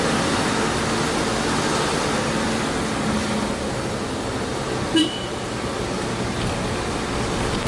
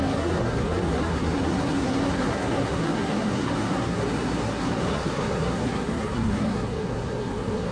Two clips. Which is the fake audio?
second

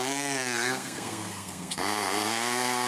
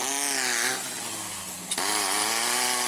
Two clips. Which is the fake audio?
first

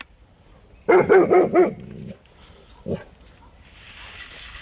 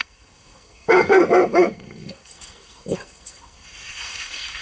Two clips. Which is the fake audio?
second